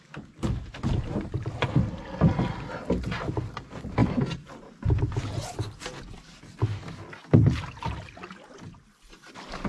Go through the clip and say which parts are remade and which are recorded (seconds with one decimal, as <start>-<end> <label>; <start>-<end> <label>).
0.0-9.7 recorded